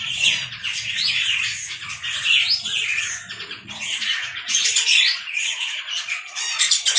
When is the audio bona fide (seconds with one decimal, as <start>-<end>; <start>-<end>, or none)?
1.5-3.1

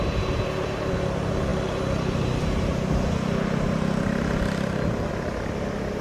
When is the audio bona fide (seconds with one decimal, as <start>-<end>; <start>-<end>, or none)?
0.0-6.0

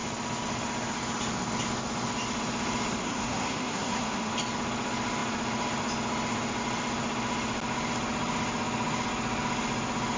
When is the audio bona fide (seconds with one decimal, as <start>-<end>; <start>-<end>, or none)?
0.0-3.0; 4.3-10.2

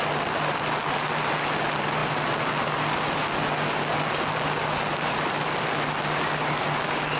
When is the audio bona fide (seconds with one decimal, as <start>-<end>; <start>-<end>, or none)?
0.0-7.2

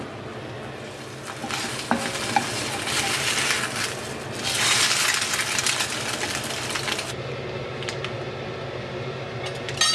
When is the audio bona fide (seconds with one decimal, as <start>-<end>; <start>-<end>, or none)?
0.0-9.9

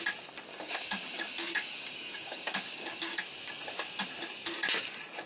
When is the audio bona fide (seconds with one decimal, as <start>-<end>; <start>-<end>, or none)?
0.0-0.5; 3.2-5.3